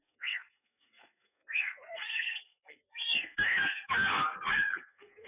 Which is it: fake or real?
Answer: fake